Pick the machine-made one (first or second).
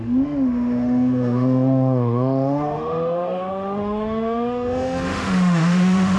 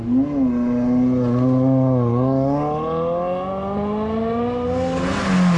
first